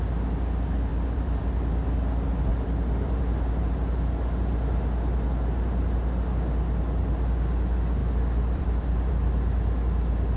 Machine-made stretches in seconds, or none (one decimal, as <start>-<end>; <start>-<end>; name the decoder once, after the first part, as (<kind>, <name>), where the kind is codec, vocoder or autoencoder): 0.9-1.4 (vocoder, BigVGAN v2); 2.5-3.2; 8.0-9.1